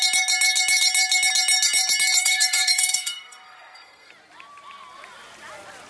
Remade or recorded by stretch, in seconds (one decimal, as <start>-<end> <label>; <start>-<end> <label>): 0.0-2.2 recorded; 2.2-4.1 remade; 4.1-5.9 recorded